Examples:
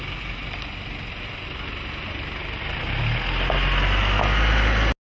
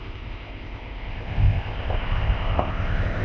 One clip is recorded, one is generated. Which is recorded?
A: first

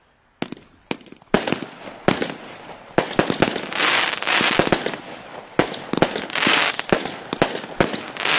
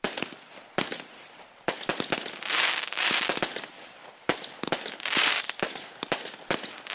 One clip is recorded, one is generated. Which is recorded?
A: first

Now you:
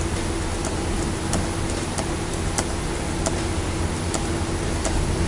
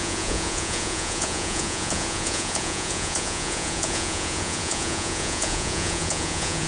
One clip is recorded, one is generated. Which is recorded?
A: first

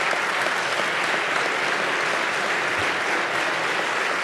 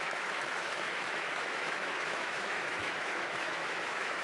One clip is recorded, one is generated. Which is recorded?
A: first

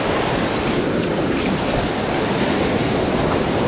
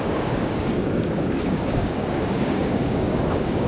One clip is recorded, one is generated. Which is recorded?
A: first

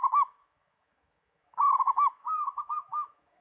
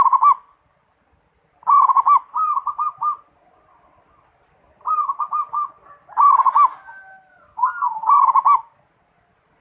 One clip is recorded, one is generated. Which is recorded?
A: second